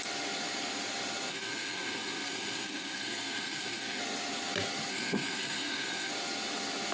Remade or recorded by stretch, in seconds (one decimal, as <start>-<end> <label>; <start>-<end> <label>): 0.0-1.3 recorded; 1.3-4.0 remade; 4.0-4.9 recorded; 4.9-6.1 remade; 6.1-6.9 recorded